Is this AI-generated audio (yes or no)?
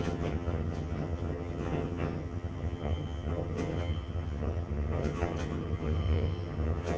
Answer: yes